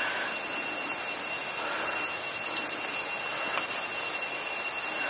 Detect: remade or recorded recorded